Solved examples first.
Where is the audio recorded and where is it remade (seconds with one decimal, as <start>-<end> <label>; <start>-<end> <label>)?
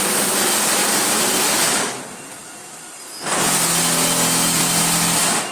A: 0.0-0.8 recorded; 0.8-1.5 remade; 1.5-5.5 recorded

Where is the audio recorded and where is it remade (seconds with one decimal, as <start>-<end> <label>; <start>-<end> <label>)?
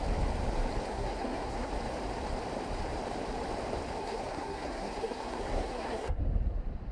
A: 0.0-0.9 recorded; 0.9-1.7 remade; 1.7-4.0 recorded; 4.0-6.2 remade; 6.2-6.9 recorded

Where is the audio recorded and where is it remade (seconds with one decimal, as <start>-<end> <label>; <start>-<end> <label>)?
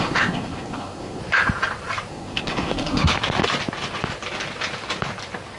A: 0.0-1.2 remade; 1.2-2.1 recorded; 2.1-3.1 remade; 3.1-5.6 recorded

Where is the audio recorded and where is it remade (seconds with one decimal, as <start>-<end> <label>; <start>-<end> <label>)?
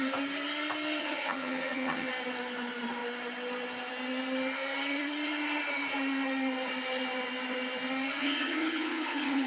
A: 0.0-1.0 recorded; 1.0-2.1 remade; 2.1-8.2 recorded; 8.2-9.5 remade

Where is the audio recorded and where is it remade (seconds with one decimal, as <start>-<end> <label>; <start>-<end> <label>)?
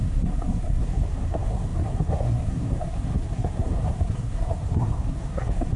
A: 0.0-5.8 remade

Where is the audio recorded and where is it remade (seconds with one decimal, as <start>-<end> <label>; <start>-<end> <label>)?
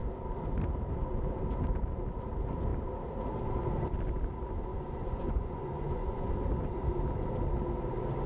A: 0.0-4.7 recorded; 4.7-6.3 remade; 6.3-8.3 recorded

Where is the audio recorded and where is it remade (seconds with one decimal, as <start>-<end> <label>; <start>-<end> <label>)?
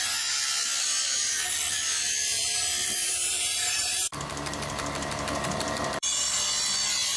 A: 0.0-3.0 recorded; 3.0-6.3 remade; 6.3-7.2 recorded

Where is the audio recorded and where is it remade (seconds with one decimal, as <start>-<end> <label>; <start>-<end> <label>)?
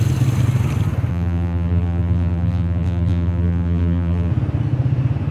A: 0.0-1.1 recorded; 1.1-4.3 remade; 4.3-5.3 recorded